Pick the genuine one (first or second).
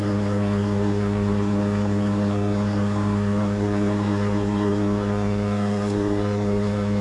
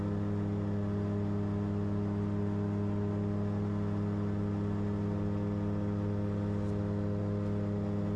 second